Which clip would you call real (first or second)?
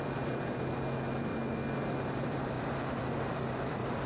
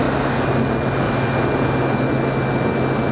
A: second